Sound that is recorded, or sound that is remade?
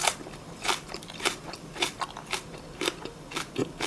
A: remade